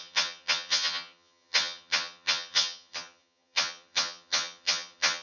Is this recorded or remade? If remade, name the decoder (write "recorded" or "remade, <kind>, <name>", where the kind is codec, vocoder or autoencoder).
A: remade, vocoder, HiFi-GAN